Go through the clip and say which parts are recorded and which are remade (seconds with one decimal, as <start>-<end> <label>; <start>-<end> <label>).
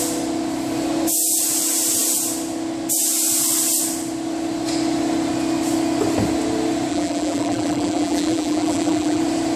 0.0-6.9 recorded; 6.9-9.2 remade; 9.2-9.6 recorded